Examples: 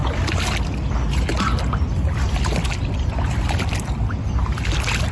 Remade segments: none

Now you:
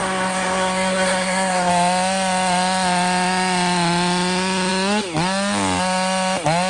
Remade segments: 0.0-1.7 (codec, SNAC)

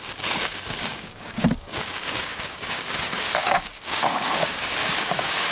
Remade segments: 0.0-5.5 (codec, DAC)

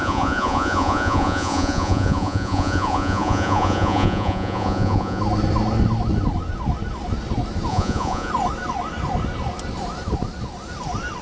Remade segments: 0.0-5.2 (vocoder, Vocos); 7.7-8.3